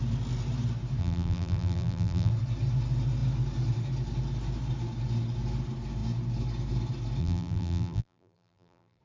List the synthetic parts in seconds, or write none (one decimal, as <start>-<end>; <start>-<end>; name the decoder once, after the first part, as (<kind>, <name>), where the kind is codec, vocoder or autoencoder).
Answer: 1.0-2.3 (vocoder, BigVGAN v2); 7.2-9.0